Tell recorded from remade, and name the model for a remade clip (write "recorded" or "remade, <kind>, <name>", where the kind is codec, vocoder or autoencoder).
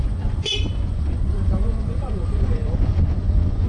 remade, vocoder, Vocos